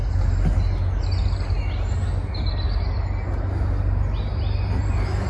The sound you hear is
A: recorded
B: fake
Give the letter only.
A